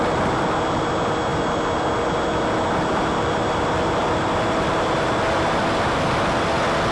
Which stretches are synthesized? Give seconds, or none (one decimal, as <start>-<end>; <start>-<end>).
none